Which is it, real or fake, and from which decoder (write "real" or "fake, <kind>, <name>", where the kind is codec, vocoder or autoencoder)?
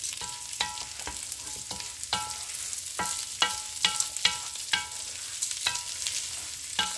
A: real